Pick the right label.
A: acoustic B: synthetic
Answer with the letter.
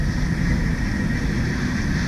A